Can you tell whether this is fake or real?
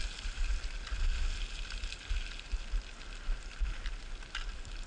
real